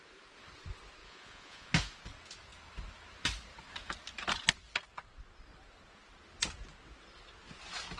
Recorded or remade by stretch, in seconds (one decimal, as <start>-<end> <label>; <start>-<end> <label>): 0.0-1.0 recorded; 1.0-1.7 remade; 1.7-8.0 recorded